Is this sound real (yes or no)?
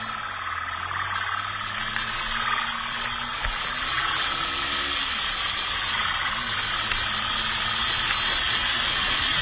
yes